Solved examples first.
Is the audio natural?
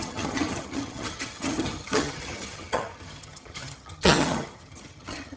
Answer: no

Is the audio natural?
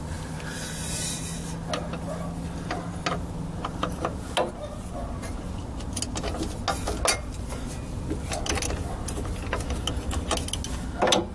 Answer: yes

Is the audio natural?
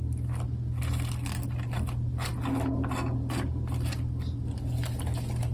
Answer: yes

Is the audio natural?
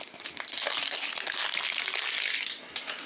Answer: yes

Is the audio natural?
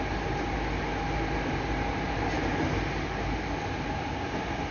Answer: yes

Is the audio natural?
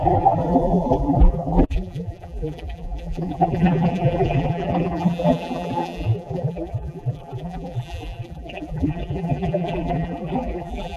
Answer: no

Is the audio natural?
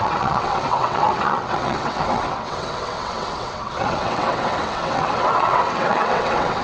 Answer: no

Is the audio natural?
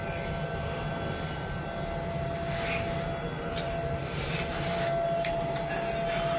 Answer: yes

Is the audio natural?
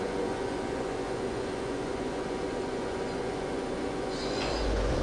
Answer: no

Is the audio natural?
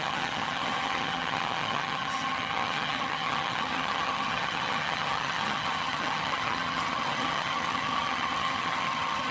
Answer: no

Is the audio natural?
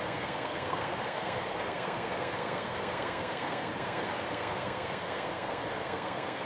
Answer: no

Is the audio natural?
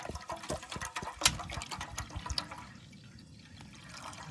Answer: yes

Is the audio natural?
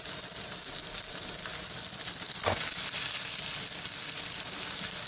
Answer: yes